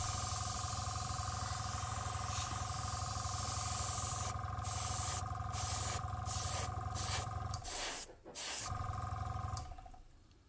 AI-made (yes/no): yes